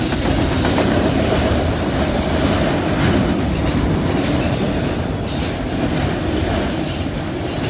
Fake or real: real